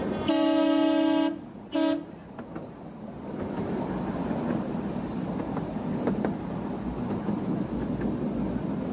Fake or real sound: real